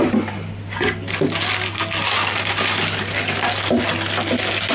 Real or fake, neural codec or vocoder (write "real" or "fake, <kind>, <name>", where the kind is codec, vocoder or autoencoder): real